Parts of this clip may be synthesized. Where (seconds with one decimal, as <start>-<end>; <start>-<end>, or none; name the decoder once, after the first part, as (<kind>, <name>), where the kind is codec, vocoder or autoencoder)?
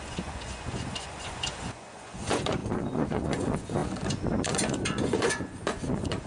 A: 0.0-6.3 (vocoder, Vocos)